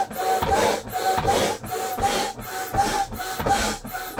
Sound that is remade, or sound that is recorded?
recorded